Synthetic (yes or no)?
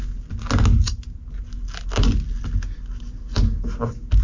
no